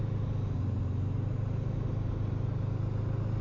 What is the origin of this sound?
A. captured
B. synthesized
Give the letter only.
A